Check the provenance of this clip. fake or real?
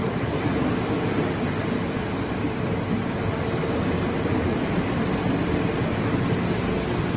fake